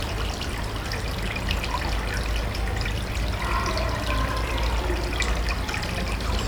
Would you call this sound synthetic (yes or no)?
no